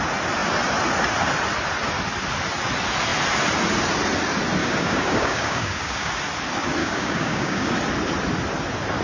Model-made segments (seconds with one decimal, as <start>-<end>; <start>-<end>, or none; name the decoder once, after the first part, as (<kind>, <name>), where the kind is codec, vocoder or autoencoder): 4.6-6.1 (codec, DAC); 6.8-7.7